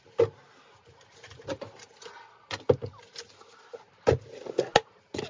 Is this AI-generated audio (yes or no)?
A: no